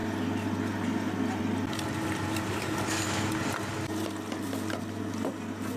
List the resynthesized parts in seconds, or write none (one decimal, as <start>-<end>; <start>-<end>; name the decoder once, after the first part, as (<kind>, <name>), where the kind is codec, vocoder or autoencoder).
none